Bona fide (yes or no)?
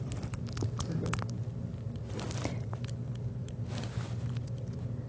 yes